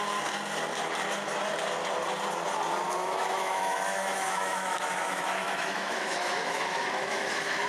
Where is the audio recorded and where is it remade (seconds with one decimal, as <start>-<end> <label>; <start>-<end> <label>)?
0.0-3.0 recorded; 3.0-7.7 remade